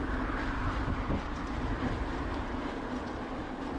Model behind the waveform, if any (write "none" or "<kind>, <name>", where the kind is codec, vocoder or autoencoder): none